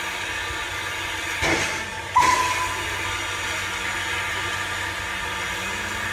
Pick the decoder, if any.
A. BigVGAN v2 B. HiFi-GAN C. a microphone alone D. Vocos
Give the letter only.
C